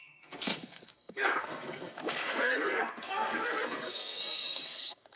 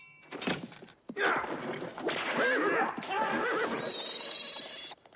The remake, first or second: first